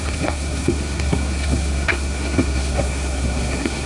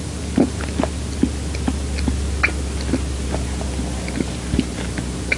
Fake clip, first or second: first